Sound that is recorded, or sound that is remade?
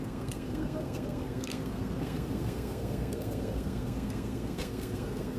remade